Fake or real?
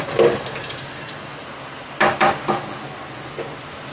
real